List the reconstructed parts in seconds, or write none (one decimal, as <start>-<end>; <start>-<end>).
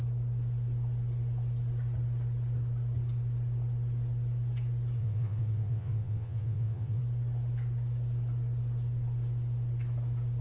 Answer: 5.0-7.0